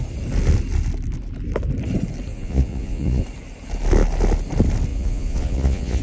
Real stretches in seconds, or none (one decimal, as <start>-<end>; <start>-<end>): 0.0-2.3; 3.2-4.9